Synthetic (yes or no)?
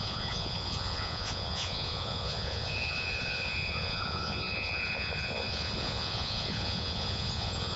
yes